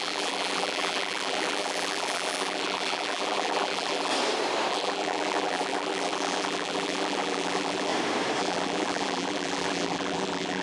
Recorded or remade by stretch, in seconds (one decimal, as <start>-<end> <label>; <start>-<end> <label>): 0.0-4.1 remade; 4.1-4.7 recorded; 4.7-7.9 remade; 7.9-8.4 recorded; 8.4-10.6 remade